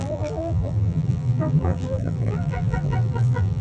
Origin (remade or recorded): remade